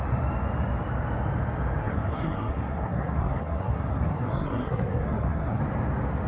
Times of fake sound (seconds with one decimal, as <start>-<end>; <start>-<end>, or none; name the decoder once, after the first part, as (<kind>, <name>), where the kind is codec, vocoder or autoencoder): 1.8-5.6 (codec, SNAC)